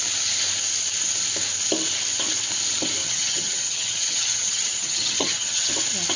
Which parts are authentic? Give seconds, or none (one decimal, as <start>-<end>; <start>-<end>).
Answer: 0.0-3.0; 5.7-6.2